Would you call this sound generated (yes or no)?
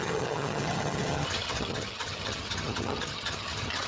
yes